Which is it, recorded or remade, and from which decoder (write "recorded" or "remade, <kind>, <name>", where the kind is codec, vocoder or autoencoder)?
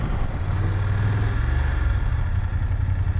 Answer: recorded